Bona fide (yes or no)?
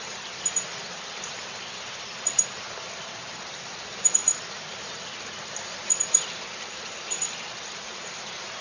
no